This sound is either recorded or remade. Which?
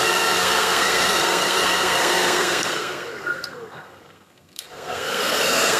remade